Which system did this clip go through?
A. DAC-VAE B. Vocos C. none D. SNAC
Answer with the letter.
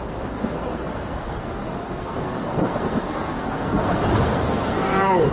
D